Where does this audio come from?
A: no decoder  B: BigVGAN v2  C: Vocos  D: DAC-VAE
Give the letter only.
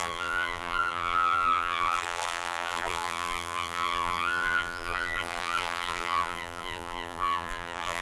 B